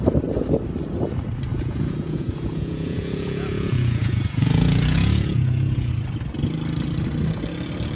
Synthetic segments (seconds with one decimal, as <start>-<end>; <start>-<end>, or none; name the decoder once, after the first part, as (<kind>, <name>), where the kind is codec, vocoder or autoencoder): 1.5-5.9 (vocoder, Vocos)